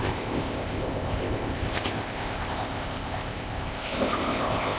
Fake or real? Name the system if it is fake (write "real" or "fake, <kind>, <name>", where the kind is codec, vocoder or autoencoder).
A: fake, codec, ZipCodec